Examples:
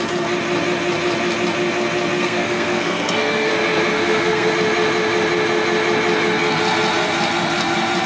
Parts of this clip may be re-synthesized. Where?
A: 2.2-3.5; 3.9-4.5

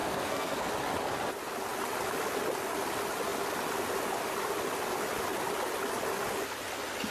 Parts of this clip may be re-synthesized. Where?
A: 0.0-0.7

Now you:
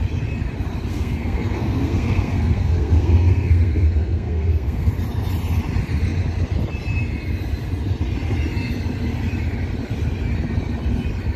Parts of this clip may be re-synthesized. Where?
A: 0.9-4.9

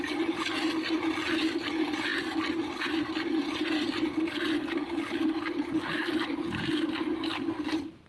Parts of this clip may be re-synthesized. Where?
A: none